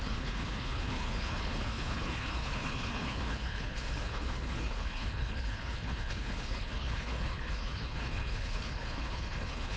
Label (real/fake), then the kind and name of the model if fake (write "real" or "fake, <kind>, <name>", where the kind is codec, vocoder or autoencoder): fake, codec, HILCodec